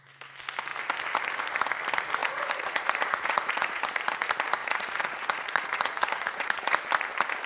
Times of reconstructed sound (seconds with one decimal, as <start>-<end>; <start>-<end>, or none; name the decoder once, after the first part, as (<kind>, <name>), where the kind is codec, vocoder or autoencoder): 2.2-3.8 (vocoder, Vocos); 4.6-6.8